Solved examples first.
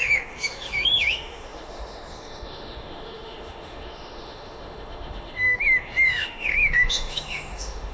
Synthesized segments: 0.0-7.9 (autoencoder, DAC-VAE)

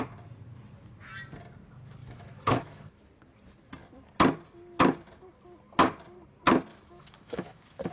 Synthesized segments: 2.0-3.0 (autoencoder, DAC-VAE); 6.7-7.9

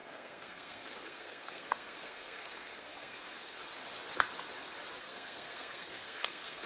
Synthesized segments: 0.0-3.6 (codec, SNAC); 5.0-6.7

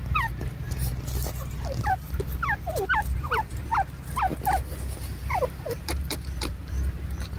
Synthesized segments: 0.0-0.9 (vocoder, BigVGAN v2); 1.9-3.7; 4.7-7.4

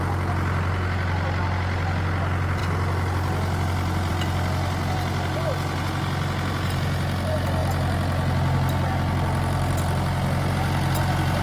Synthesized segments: none